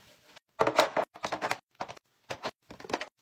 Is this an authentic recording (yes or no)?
yes